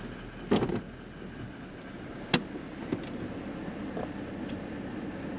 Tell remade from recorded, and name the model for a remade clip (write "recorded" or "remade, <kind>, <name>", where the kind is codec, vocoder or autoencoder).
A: recorded